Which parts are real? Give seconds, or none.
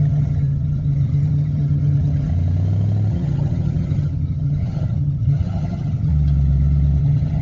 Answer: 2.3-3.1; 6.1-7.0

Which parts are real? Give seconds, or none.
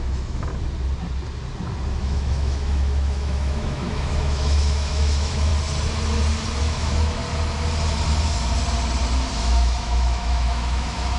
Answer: 0.5-2.0; 5.5-6.6; 7.2-9.4